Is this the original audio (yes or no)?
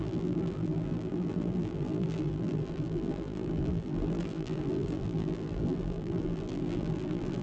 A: no